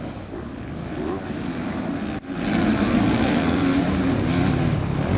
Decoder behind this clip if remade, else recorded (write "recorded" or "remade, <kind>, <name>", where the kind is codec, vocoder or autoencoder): recorded